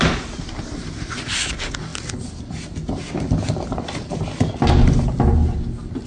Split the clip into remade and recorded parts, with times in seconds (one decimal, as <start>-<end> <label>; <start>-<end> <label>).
0.0-6.1 recorded